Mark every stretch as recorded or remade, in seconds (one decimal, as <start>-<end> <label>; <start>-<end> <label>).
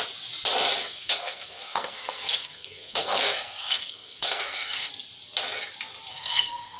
0.0-0.8 recorded; 0.8-4.9 remade; 4.9-6.1 recorded; 6.1-6.8 remade